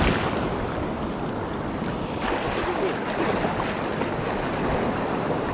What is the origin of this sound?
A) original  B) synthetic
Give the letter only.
A